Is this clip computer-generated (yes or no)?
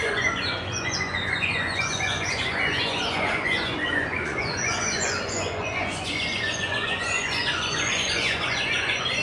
yes